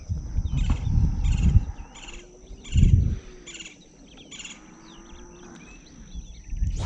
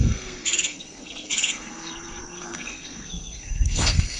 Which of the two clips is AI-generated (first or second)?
second